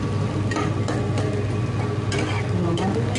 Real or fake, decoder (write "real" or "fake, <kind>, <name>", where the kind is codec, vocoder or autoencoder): real